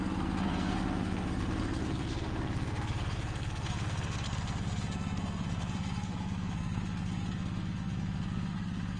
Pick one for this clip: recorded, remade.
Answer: remade